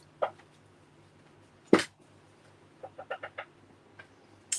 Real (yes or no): yes